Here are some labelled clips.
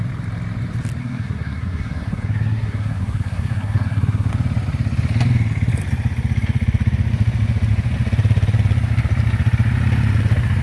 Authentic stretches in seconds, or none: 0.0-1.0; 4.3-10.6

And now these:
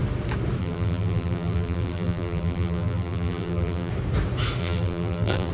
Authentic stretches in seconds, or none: 0.0-0.6; 3.9-4.6

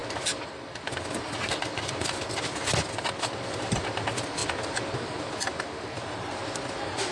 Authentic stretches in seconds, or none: 0.0-1.0; 4.4-5.4; 6.4-7.1